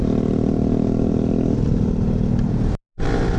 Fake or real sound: real